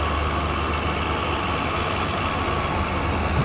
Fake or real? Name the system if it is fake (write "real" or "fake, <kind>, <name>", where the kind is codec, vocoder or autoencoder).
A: real